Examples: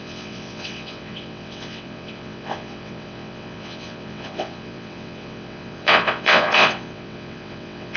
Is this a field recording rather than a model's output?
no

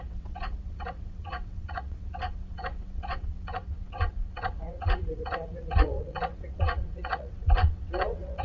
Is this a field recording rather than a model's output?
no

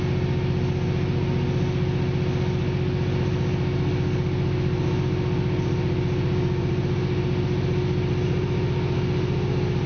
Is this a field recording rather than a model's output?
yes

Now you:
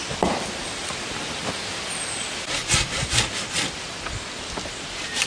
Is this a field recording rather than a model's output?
yes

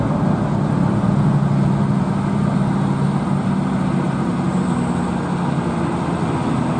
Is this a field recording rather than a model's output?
yes